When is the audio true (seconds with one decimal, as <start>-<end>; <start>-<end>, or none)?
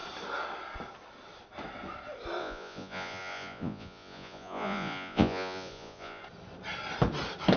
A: 0.0-2.4; 6.2-7.6